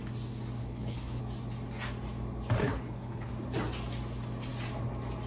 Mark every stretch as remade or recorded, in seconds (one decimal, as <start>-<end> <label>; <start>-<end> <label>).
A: 0.0-0.6 recorded; 0.6-1.2 remade; 1.2-2.6 recorded; 2.6-3.3 remade; 3.3-5.3 recorded